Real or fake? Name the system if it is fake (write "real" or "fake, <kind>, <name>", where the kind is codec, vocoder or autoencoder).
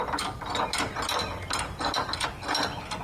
real